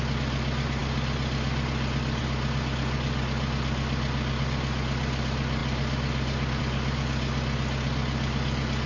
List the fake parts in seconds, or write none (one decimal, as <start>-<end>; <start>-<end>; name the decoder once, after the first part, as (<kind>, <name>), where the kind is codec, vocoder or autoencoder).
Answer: none